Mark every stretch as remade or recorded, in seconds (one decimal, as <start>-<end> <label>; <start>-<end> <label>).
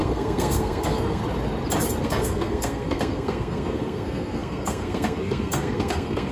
0.0-1.2 remade; 1.2-2.0 recorded; 2.0-6.3 remade